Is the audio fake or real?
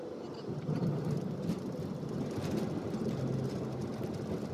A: real